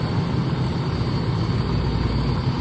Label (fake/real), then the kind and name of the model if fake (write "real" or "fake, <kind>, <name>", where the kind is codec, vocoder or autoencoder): real